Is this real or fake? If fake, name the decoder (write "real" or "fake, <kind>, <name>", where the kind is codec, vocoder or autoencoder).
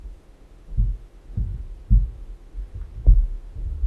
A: fake, autoencoder, DAC-VAE